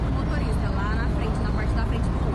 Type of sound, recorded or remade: recorded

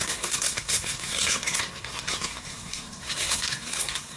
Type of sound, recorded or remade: remade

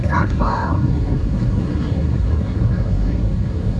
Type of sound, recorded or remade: remade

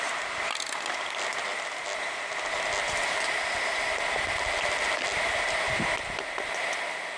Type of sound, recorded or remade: recorded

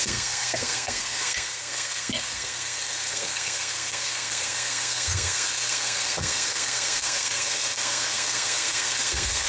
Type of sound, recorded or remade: remade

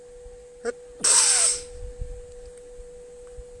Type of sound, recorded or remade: recorded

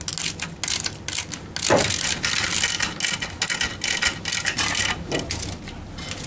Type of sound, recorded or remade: recorded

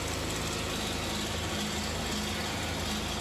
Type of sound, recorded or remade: recorded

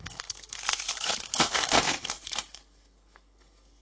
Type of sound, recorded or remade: remade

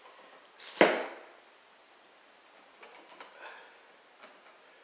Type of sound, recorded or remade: recorded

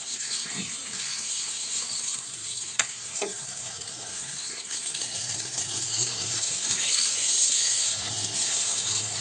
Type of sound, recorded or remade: remade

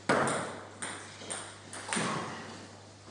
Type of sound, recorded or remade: recorded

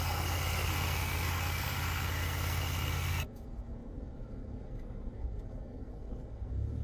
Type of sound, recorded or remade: remade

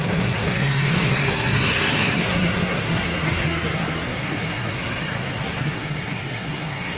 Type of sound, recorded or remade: remade